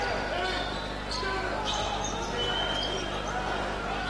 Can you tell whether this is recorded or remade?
recorded